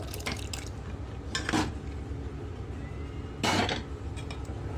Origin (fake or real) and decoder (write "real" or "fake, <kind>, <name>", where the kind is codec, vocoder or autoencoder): real